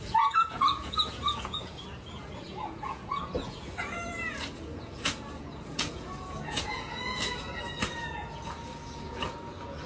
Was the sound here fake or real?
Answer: fake